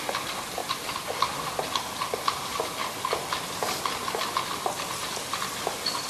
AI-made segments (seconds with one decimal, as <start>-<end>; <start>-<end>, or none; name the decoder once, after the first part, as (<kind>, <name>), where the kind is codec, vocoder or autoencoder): 0.0-0.6 (vocoder, BigVGAN v2); 2.3-2.8